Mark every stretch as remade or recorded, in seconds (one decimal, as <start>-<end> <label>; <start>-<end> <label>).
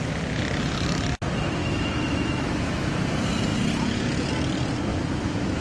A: 0.0-1.6 recorded; 1.6-2.9 remade; 2.9-4.9 recorded; 4.9-5.6 remade